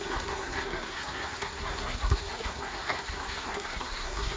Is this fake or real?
fake